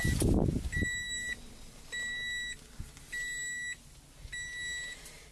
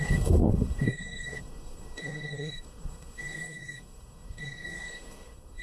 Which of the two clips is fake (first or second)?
second